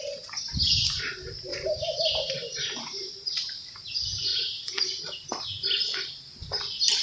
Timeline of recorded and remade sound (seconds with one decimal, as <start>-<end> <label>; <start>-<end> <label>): 0.0-1.5 recorded; 1.5-3.4 remade; 3.4-4.3 recorded; 4.3-5.3 remade; 5.3-7.0 recorded